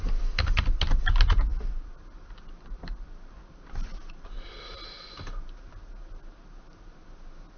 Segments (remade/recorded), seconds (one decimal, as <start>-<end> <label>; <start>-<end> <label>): 0.0-1.5 recorded; 1.5-5.3 remade; 5.3-7.6 recorded